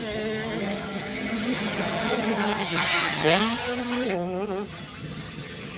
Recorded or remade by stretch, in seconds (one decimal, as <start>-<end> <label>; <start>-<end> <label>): 0.0-0.6 recorded; 0.6-5.8 remade